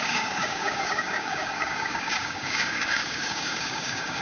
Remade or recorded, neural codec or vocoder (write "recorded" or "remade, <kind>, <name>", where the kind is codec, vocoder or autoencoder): remade, codec, DAC